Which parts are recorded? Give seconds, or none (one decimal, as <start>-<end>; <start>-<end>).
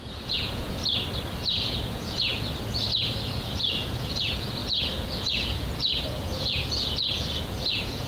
0.8-1.3; 2.3-3.0